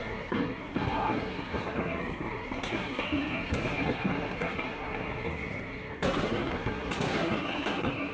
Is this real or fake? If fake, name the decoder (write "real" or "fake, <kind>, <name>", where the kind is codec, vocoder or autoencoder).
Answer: fake, codec, SNAC